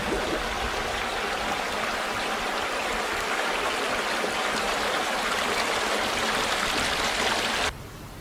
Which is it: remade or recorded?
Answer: remade